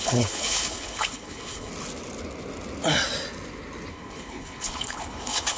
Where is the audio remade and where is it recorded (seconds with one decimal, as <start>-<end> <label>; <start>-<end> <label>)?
0.0-1.7 remade; 1.7-3.9 recorded; 3.9-5.6 remade